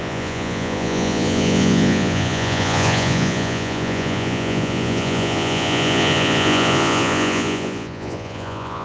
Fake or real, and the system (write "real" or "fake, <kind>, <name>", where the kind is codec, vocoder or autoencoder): fake, vocoder, Vocos